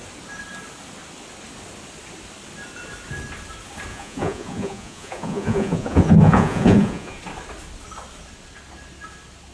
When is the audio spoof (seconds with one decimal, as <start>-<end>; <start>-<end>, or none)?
3.9-7.2